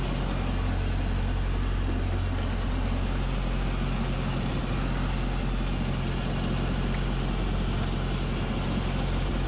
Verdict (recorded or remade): recorded